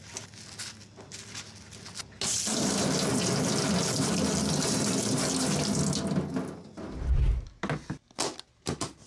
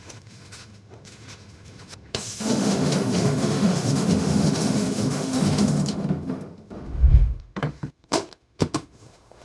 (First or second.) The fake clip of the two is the second